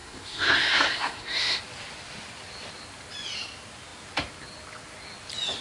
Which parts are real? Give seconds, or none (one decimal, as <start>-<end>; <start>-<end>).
1.6-5.6